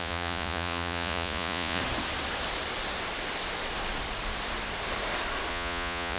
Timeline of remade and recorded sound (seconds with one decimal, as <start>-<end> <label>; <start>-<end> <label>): 0.0-1.8 remade; 1.8-5.5 recorded; 5.5-6.2 remade

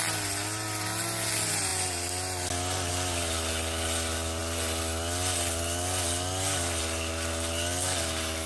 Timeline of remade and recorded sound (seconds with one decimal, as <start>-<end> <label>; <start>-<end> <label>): 0.0-8.5 recorded

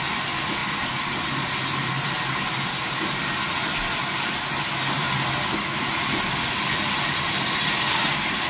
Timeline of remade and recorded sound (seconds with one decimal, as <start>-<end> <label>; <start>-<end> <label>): 0.0-8.5 recorded

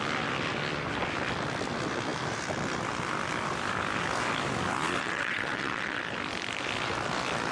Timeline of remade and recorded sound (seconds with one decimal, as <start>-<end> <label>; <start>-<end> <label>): 0.0-5.0 recorded; 5.0-6.0 remade; 6.0-7.5 recorded